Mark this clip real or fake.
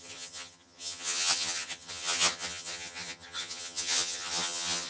fake